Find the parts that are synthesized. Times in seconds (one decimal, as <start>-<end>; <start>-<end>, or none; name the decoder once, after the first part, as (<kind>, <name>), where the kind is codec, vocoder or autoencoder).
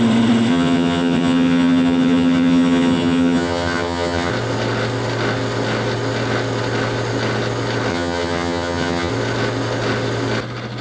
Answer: 0.5-4.3 (vocoder, HiFi-GAN); 7.9-9.1